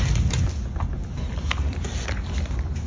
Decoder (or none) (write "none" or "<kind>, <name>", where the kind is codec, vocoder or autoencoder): vocoder, BigVGAN v2